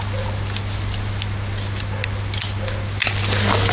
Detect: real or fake real